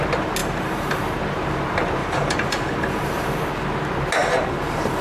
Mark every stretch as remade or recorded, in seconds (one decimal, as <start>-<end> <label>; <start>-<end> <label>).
0.0-0.4 recorded; 0.4-1.0 remade; 1.0-2.0 recorded; 2.0-3.4 remade; 3.4-4.2 recorded; 4.2-5.0 remade